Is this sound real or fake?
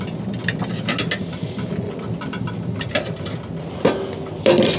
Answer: real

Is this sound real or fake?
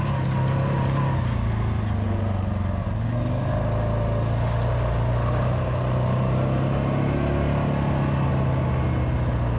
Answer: real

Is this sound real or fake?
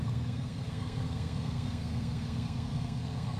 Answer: fake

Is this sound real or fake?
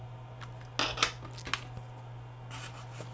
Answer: real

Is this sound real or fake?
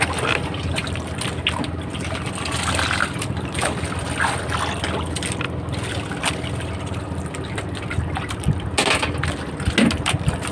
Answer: real